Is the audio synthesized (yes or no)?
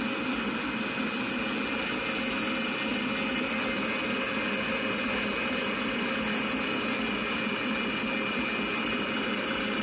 no